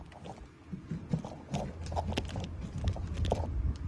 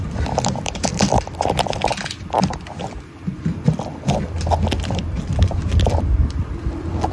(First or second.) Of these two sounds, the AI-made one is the second